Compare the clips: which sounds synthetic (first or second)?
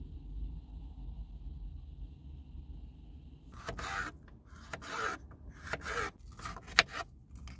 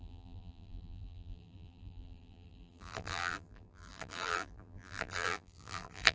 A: second